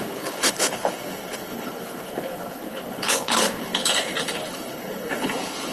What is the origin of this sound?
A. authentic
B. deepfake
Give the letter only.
B